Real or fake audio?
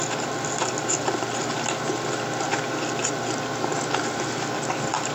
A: real